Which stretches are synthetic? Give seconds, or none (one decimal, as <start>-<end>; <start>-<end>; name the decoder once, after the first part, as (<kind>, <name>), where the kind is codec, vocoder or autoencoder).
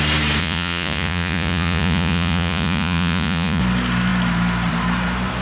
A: 0.4-3.6 (vocoder, Vocos)